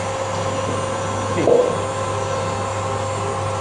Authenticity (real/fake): real